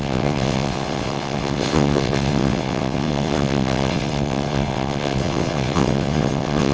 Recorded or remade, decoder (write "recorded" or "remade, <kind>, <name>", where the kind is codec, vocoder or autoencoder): remade, vocoder, WaveNeXt